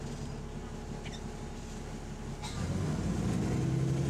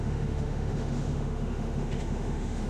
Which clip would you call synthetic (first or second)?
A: second